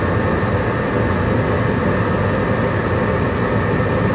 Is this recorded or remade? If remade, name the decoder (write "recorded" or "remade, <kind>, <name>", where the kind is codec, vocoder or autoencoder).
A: recorded